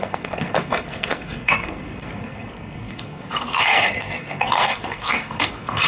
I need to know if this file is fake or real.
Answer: fake